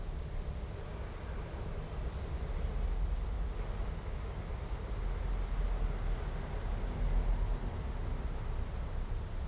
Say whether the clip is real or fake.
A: real